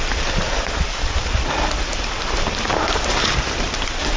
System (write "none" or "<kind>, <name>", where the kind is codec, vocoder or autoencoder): vocoder, BigVGAN v2